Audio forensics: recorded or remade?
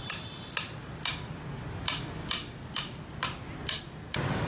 recorded